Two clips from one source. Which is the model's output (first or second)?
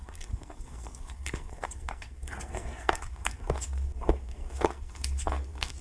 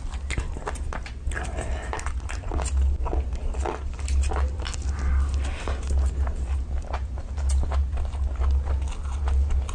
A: first